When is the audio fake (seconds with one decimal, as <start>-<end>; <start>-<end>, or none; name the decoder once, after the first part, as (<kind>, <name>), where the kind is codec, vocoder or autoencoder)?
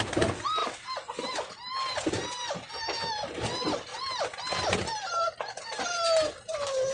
none